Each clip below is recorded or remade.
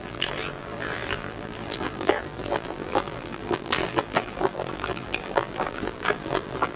remade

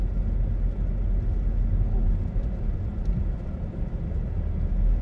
recorded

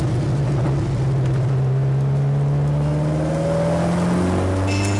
recorded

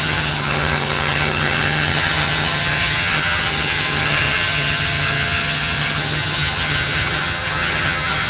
remade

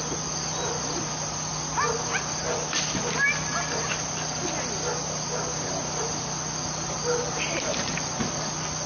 recorded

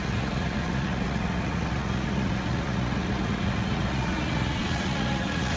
remade